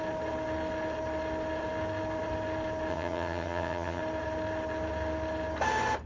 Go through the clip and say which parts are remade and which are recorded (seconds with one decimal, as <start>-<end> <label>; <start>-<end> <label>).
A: 0.0-2.9 recorded; 2.9-4.0 remade; 4.0-6.1 recorded